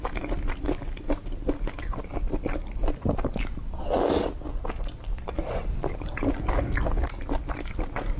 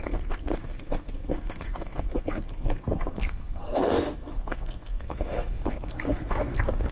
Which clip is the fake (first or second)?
second